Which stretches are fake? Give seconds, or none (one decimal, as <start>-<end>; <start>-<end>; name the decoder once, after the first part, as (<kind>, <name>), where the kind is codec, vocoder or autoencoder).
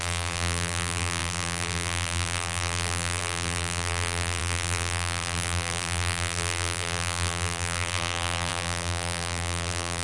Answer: 0.0-10.0 (vocoder, BigVGAN v2)